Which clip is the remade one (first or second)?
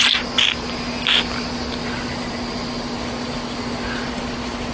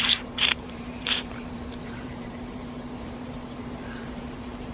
second